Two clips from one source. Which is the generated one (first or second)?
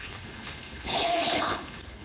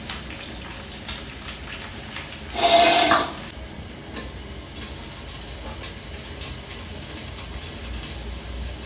first